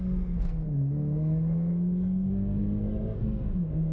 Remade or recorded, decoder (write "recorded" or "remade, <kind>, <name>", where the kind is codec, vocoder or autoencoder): remade, codec, SNAC